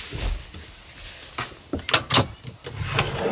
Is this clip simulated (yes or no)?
no